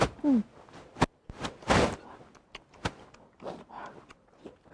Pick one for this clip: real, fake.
real